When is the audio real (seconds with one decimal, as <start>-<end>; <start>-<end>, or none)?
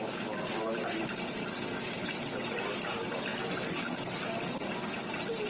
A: 0.0-5.5